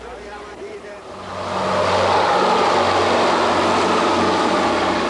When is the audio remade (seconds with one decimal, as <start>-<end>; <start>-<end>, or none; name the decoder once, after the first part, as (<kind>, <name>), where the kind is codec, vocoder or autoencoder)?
0.0-1.3 (vocoder, BigVGAN v2); 4.4-5.1